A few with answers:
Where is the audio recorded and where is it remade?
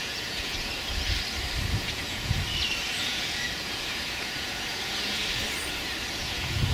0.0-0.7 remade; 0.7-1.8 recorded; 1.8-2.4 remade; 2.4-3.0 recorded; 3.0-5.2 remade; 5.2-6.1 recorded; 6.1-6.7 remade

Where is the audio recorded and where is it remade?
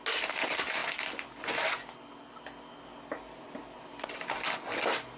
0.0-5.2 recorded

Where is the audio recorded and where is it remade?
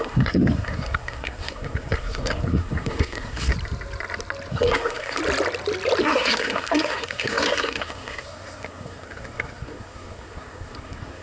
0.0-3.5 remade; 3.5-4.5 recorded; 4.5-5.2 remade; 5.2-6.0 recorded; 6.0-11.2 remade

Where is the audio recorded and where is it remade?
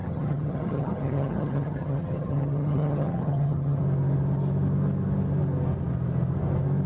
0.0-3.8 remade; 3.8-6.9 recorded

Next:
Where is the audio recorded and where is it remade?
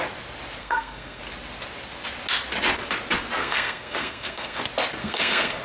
0.0-0.6 recorded; 0.6-1.2 remade; 1.2-3.4 recorded; 3.4-4.6 remade; 4.6-5.0 recorded; 5.0-5.6 remade